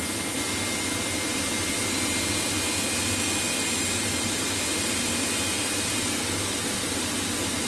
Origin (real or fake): real